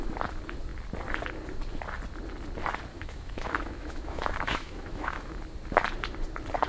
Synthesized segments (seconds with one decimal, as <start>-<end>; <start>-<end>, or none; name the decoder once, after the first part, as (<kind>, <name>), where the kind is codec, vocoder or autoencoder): 2.9-5.4 (autoencoder, DAC-VAE)